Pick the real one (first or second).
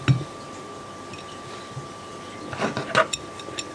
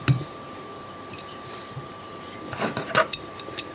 first